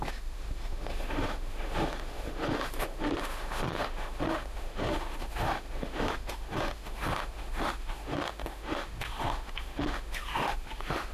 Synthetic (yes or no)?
yes